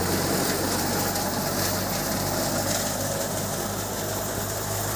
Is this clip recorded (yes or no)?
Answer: yes